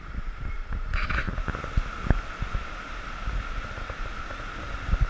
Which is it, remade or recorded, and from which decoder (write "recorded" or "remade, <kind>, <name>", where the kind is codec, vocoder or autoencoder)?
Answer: recorded